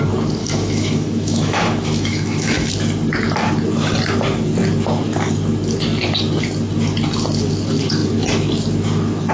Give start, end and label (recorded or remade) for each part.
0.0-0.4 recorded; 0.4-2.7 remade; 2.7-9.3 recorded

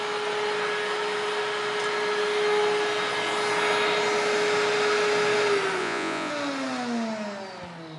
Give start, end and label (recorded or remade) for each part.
0.0-5.8 recorded; 5.8-6.3 remade; 6.3-8.0 recorded

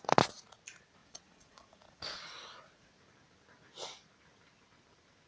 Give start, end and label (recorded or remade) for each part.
0.0-1.0 recorded; 1.0-2.9 remade; 2.9-5.3 recorded

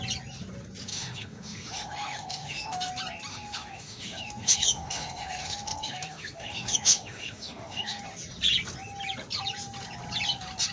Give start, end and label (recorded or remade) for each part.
0.0-0.9 recorded; 0.9-2.9 remade; 2.9-3.3 recorded; 3.3-8.0 remade; 8.0-10.7 recorded

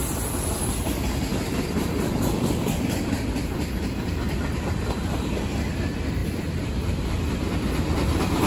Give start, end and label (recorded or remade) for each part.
0.0-0.8 remade; 0.8-1.3 recorded; 1.3-5.4 remade; 5.4-6.2 recorded; 6.2-7.2 remade; 7.2-8.5 recorded

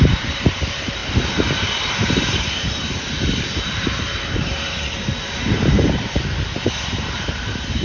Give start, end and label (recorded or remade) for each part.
0.0-1.0 remade; 1.0-1.9 recorded; 1.9-7.8 remade